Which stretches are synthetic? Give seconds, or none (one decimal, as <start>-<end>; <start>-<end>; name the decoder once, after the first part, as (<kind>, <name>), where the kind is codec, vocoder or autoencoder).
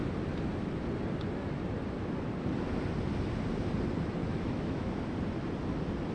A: 4.2-4.9 (autoencoder, DAC-VAE)